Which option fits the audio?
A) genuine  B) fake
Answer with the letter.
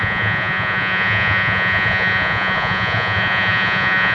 B